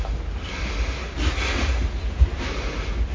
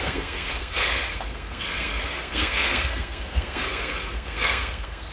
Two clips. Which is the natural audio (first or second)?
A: first